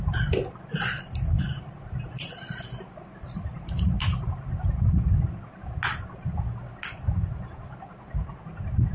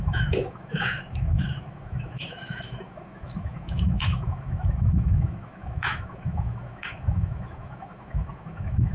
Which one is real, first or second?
first